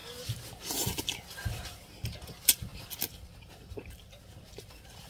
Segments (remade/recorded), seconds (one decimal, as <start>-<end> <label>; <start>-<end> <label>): 0.0-5.1 recorded